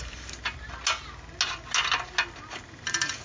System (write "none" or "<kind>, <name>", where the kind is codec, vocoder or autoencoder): none